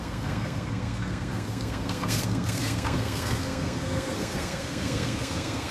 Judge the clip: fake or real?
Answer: fake